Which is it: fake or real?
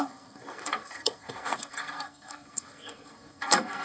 fake